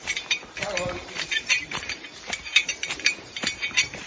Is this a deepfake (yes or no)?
yes